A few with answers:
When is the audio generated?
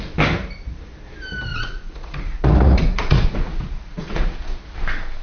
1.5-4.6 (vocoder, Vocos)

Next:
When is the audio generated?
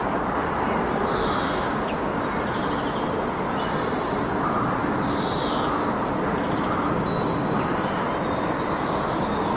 4.8-6.8 (vocoder, BigVGAN v2)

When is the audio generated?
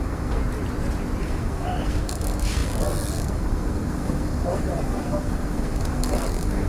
0.0-0.4 (codec, SNAC); 1.2-6.7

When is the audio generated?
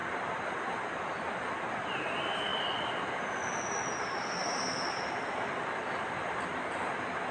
none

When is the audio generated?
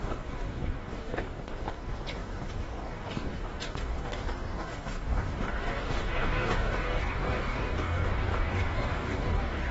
0.0-9.7 (codec, DAC)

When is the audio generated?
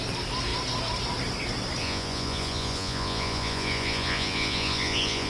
1.8-5.3 (vocoder, Vocos)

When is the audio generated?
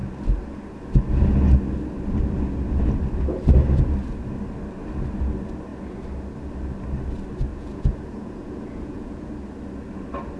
7.5-9.3 (vocoder, Vocos)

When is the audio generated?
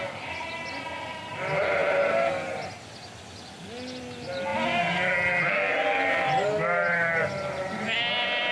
none